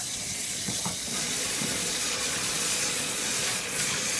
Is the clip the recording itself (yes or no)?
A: no